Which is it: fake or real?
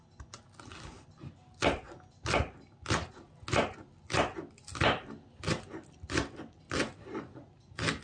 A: real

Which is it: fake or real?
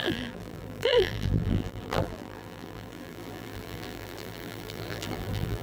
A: fake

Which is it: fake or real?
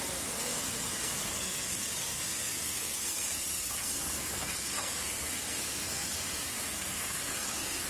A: fake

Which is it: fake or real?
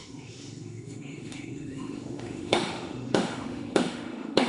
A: fake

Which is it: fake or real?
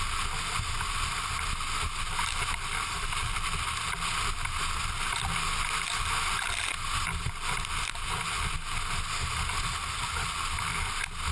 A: real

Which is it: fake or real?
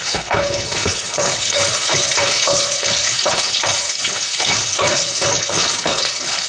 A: fake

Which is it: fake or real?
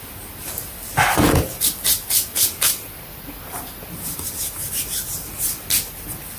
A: real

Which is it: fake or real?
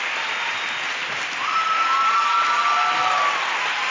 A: real